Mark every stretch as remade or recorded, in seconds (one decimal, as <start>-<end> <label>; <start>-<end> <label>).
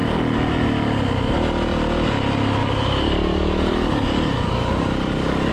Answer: 0.0-2.6 recorded; 2.6-5.5 remade